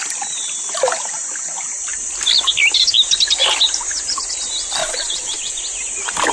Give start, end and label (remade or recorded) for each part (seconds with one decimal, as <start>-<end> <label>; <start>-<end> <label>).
0.0-4.8 recorded; 4.8-5.6 remade; 5.6-6.3 recorded